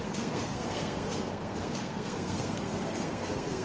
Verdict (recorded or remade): remade